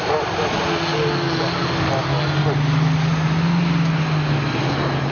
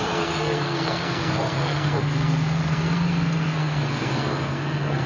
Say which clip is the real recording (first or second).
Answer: first